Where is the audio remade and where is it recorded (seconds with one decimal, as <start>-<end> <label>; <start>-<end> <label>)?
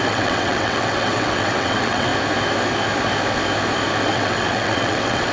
0.0-2.1 remade; 2.1-4.0 recorded; 4.0-5.3 remade